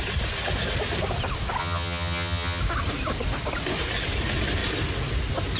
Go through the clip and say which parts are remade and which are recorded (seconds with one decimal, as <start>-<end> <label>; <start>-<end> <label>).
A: 0.0-1.6 recorded; 1.6-2.6 remade; 2.6-5.6 recorded